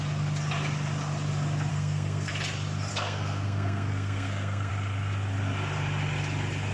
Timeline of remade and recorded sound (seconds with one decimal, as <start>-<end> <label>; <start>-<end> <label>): 0.0-1.7 recorded; 1.7-2.3 remade; 2.3-2.9 recorded; 2.9-4.7 remade; 4.7-6.7 recorded